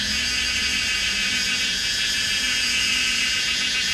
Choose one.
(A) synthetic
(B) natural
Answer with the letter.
A